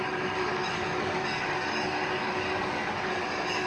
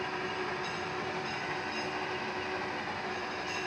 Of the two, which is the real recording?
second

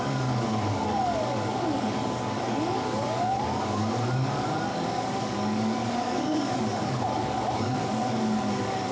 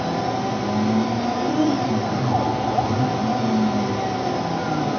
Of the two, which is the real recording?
second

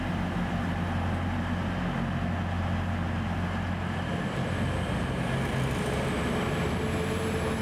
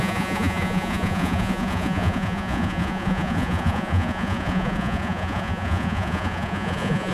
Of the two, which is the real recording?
first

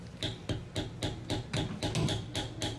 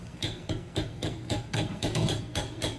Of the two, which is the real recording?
first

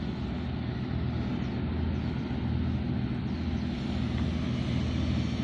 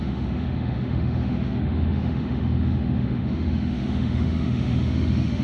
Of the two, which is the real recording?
first